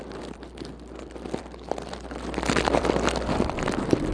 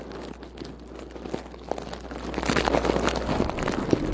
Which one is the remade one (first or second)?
first